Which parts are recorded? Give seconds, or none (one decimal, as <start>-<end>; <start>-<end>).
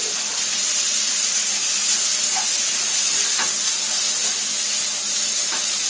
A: 3.1-5.9